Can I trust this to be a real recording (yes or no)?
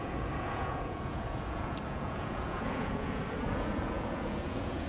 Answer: no